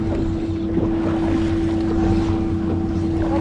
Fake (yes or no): no